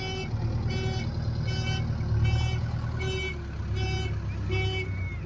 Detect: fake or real real